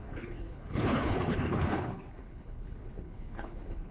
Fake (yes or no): yes